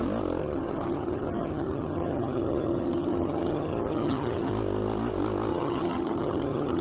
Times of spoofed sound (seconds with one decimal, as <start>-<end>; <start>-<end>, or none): 0.4-4.5; 5.5-6.8